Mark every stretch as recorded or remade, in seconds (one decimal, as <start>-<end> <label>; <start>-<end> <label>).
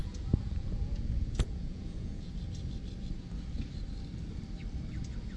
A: 0.0-2.3 remade; 2.3-5.4 recorded